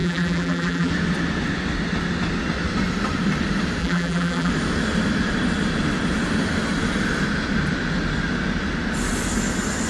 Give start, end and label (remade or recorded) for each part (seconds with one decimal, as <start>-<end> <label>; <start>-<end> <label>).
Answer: 0.0-0.9 remade; 0.9-3.8 recorded; 3.8-4.5 remade; 4.5-9.9 recorded